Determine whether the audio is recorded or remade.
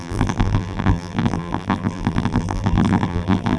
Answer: remade